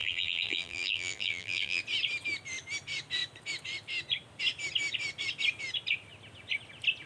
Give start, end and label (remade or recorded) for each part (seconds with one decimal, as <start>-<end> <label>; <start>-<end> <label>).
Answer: 0.0-1.8 remade; 1.8-7.1 recorded